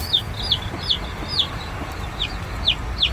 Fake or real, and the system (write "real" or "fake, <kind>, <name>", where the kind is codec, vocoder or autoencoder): real